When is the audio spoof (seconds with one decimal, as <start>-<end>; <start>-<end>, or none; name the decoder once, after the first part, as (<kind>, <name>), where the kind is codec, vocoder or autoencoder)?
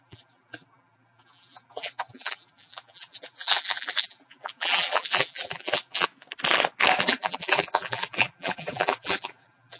0.0-6.1 (vocoder, BigVGAN v2); 7.0-9.8